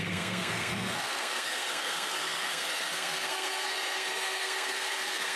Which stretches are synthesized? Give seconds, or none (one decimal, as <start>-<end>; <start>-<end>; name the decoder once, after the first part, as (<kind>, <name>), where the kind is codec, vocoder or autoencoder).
0.0-5.4 (codec, SNAC)